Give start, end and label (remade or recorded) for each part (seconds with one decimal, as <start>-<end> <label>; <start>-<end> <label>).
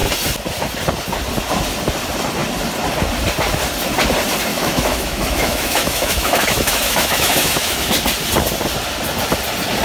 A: 0.0-4.5 recorded; 4.5-7.9 remade; 7.9-9.8 recorded